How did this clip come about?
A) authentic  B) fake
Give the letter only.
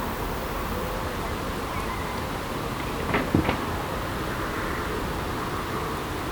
A